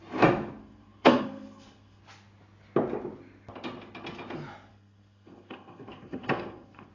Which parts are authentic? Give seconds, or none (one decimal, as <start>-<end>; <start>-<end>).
0.0-0.6; 2.0-4.7